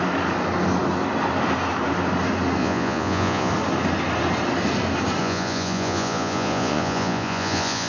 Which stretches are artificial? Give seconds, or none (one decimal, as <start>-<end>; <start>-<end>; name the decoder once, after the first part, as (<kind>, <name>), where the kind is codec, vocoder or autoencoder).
2.6-3.5 (vocoder, Vocos); 5.2-7.9